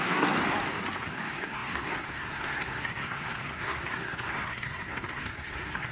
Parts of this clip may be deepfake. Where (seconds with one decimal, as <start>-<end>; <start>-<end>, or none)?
0.0-0.4; 1.1-5.9